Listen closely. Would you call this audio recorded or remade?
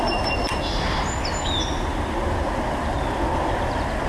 recorded